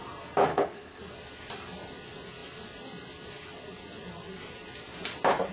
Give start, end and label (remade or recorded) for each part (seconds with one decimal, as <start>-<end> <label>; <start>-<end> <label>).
0.0-0.5 recorded; 0.5-1.0 remade; 1.0-5.5 recorded